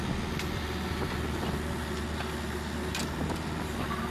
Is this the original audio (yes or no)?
yes